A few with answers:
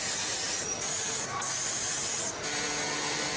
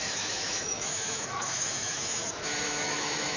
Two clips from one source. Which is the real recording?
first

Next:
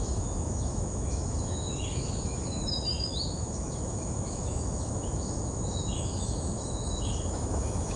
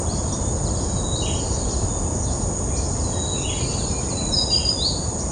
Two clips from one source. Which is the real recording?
second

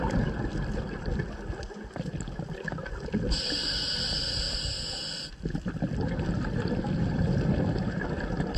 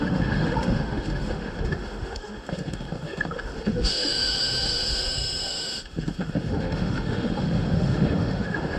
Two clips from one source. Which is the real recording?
first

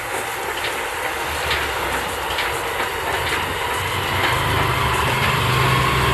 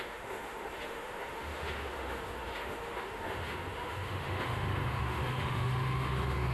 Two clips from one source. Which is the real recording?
first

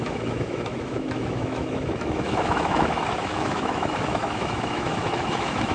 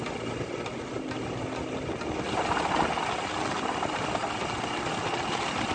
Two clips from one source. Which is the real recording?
second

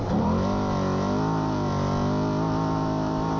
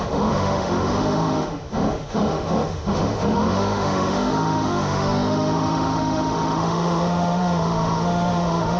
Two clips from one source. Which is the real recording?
first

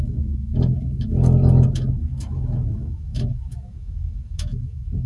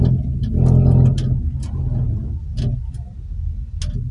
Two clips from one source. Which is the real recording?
second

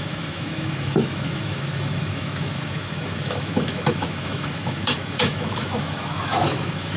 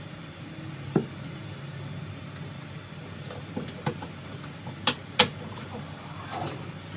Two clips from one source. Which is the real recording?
second